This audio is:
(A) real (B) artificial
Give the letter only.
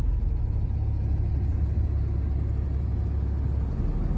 A